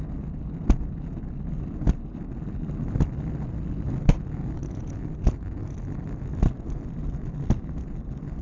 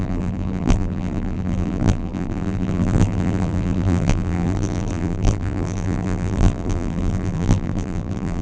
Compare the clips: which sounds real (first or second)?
first